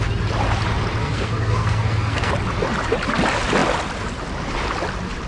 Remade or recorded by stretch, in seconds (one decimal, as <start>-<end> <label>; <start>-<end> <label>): 0.0-1.0 recorded; 1.0-2.3 remade; 2.3-5.3 recorded